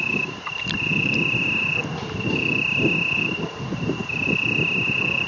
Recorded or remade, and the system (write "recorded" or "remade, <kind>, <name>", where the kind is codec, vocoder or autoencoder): recorded